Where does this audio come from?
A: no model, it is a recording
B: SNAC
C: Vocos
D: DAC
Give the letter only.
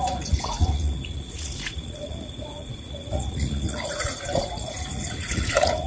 C